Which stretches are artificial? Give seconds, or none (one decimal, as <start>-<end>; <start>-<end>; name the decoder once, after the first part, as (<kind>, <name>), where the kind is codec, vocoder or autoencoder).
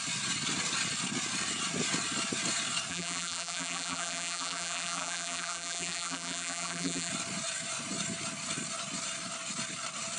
2.9-7.1 (vocoder, BigVGAN v2)